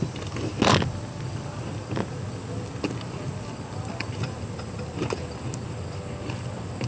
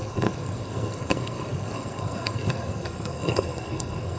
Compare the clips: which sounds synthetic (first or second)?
second